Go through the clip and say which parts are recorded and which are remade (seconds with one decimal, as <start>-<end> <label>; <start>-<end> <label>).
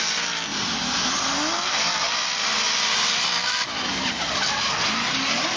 0.0-2.4 recorded; 2.4-4.5 remade; 4.5-5.6 recorded